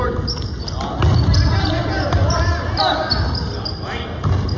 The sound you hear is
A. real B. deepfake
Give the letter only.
A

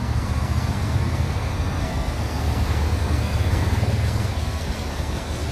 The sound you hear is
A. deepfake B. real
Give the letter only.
A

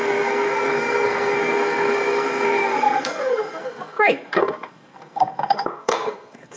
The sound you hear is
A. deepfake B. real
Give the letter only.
A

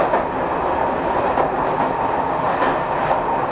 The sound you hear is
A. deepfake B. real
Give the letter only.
B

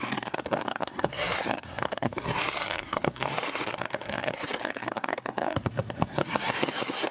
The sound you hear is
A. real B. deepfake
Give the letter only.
B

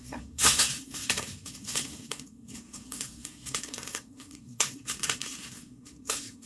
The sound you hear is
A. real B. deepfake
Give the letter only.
B